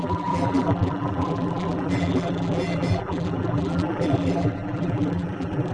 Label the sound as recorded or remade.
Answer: remade